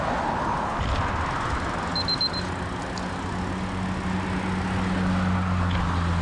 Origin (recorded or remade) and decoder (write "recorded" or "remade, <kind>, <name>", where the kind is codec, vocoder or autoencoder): recorded